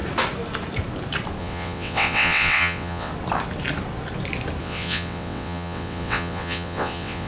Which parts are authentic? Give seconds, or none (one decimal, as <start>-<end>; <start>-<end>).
0.0-1.4; 3.1-4.6